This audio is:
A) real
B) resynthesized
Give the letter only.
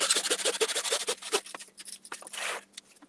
A